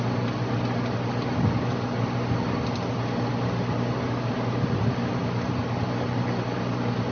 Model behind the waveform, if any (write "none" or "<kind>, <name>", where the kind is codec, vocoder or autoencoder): none